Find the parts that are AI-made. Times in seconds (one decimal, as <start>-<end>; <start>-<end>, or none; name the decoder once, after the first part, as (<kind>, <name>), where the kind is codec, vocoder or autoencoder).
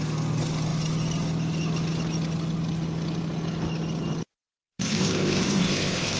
4.8-6.2 (codec, ZipCodec)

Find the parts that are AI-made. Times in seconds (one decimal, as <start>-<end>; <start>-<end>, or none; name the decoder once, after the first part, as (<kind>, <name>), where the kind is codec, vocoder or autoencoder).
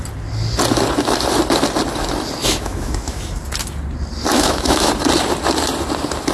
2.4-3.2 (autoencoder, DAC-VAE); 4.3-4.9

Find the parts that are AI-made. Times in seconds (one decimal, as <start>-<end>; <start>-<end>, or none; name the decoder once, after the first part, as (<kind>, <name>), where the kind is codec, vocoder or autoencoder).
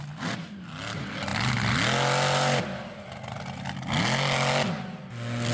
none